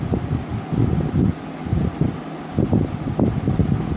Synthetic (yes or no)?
no